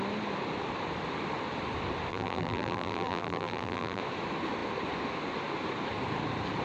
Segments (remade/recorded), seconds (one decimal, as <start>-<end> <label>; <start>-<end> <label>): 0.0-2.1 recorded; 2.1-4.0 remade; 4.0-6.6 recorded

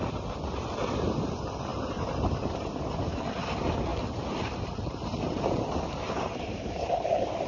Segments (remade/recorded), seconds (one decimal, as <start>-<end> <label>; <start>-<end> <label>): 0.0-1.7 recorded; 1.7-3.2 remade; 3.2-3.9 recorded; 3.9-5.6 remade; 5.6-7.5 recorded

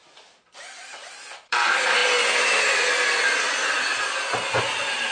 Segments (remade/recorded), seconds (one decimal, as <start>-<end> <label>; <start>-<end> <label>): 0.0-2.0 remade; 2.0-4.6 recorded; 4.6-5.1 remade

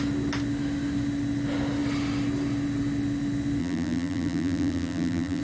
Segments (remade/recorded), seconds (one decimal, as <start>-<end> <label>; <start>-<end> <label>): 0.0-3.6 recorded; 3.6-5.4 remade

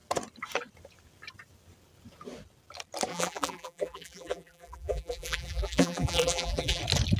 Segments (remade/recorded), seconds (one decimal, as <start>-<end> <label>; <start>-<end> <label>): 0.0-3.1 recorded; 3.1-6.8 remade; 6.8-7.2 recorded

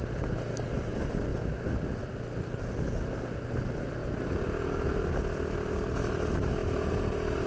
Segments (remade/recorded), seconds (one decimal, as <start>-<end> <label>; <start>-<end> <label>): 0.0-1.3 recorded; 1.3-2.1 remade; 2.1-7.5 recorded

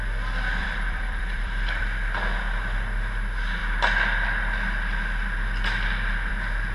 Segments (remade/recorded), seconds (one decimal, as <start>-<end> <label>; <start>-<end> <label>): 0.0-0.6 recorded; 0.6-1.8 remade; 1.8-6.7 recorded

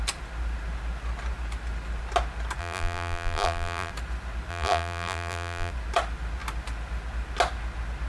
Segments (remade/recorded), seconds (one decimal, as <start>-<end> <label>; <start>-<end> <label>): 0.0-2.6 recorded; 2.6-3.9 remade; 3.9-4.5 recorded; 4.5-5.7 remade; 5.7-8.1 recorded